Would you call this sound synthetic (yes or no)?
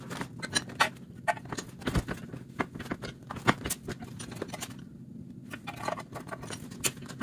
no